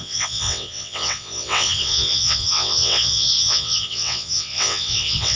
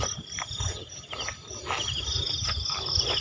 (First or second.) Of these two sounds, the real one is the second